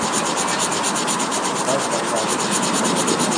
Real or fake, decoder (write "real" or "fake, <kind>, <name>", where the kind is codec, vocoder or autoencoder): real